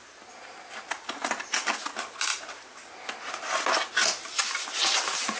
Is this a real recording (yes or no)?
yes